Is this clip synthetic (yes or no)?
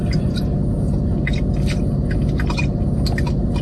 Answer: no